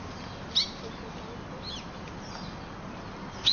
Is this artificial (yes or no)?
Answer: no